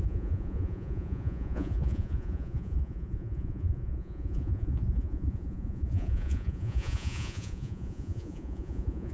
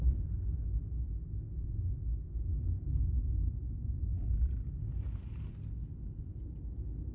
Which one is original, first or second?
second